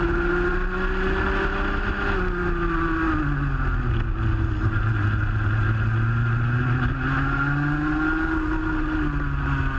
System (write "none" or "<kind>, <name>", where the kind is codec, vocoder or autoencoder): none